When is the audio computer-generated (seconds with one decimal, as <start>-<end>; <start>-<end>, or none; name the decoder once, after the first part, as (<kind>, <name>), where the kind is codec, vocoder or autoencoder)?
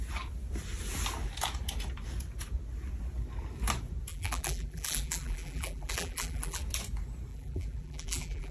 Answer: 4.1-6.6 (vocoder, BigVGAN v2); 7.3-8.5